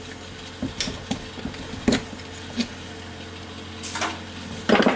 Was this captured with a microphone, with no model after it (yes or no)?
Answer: yes